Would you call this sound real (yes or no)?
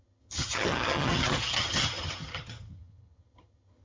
no